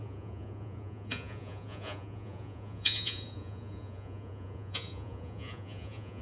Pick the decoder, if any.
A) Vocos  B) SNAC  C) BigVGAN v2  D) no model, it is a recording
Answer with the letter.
A